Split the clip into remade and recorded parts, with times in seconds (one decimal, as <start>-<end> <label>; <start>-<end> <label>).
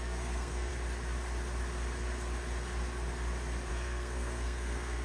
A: 0.0-0.7 remade; 0.7-3.7 recorded; 3.7-5.0 remade